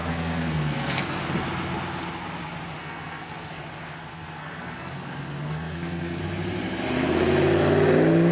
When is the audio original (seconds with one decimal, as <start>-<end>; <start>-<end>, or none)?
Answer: 1.2-2.8; 3.6-4.1; 6.2-8.3